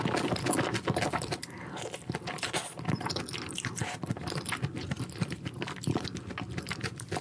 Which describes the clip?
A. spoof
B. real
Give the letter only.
B